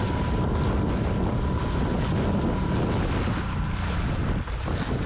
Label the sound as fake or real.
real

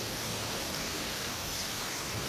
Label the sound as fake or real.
fake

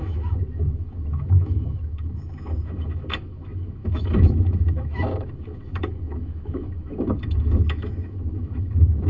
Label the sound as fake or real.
fake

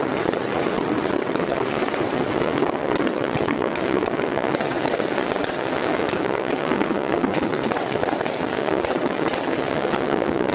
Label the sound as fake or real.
fake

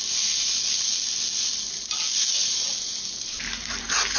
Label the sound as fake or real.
real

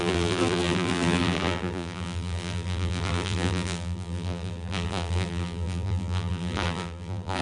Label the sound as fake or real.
fake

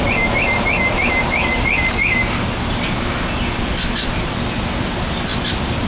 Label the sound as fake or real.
real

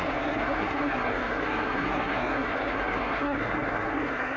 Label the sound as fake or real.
fake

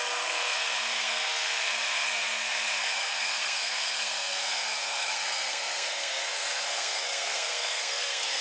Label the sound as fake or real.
fake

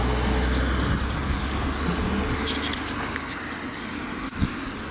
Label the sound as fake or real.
real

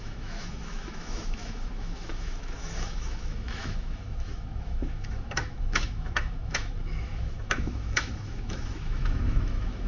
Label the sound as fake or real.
fake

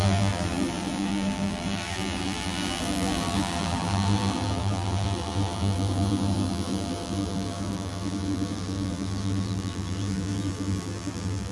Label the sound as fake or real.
fake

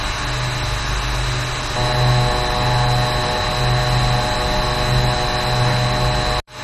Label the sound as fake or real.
real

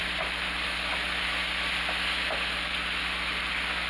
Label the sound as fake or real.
real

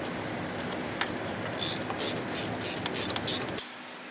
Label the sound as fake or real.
real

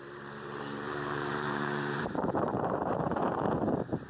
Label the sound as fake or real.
fake